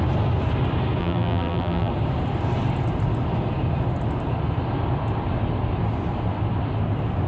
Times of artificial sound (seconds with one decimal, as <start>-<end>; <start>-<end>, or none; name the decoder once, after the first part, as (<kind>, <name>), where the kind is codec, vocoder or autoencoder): 1.0-1.9 (vocoder, BigVGAN v2)